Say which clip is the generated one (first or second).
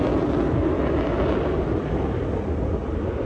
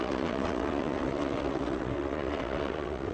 second